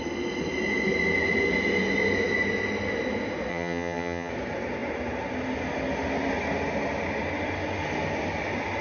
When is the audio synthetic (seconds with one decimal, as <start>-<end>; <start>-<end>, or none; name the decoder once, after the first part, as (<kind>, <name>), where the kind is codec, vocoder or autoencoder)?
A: 3.5-4.3 (vocoder, HiFi-GAN)